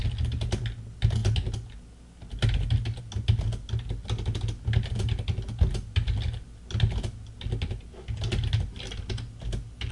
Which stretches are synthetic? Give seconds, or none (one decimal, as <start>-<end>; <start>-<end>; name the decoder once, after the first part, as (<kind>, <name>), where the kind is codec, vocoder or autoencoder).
none

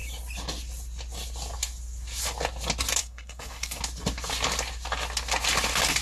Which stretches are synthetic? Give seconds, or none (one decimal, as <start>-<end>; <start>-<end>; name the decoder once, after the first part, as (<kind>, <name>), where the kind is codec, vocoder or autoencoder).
3.0-3.8 (codec, SNAC)

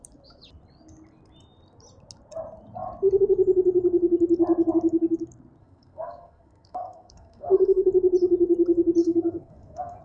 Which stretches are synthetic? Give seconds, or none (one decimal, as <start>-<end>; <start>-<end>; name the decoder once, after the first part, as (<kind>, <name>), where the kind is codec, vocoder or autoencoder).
5.6-7.9 (codec, SNAC); 9.0-10.0

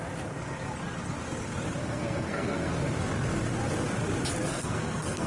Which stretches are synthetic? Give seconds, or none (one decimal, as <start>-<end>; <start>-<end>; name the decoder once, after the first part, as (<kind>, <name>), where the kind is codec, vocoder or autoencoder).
1.8-2.7 (codec, SNAC); 4.5-5.3

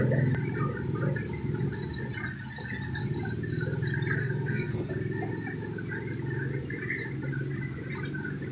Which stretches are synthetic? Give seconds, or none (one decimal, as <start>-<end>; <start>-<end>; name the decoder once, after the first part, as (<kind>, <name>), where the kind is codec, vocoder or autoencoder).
4.2-4.9 (codec, SNAC)

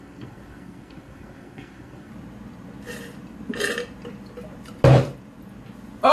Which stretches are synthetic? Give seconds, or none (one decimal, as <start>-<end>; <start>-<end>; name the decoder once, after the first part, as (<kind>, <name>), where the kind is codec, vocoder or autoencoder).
0.0-2.1 (codec, SNAC)

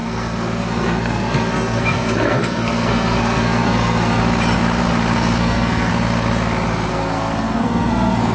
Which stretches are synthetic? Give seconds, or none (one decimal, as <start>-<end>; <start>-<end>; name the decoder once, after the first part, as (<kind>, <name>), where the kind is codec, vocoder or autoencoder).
0.0-4.2 (codec, SNAC); 5.4-5.9; 6.9-8.3

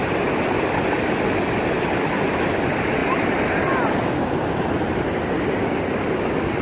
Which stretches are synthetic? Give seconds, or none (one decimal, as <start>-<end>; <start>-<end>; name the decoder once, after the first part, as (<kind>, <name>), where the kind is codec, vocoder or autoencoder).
none